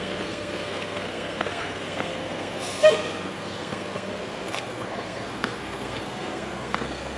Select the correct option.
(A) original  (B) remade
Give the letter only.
B